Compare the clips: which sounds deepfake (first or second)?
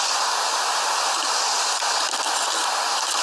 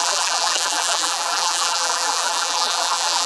second